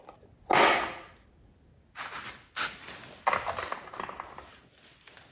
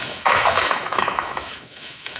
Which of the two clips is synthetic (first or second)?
second